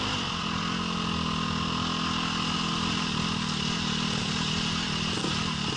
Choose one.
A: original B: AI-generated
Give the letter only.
A